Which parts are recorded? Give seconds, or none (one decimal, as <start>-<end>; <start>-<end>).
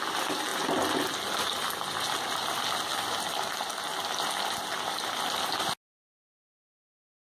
0.0-7.3